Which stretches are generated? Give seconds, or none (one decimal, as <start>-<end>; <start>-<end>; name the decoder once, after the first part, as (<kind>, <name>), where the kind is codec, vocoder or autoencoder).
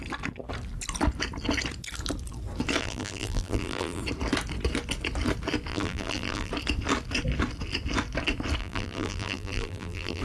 2.8-4.0 (vocoder, BigVGAN v2); 5.7-6.5; 8.6-10.2